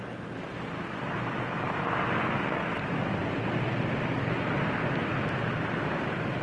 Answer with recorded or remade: recorded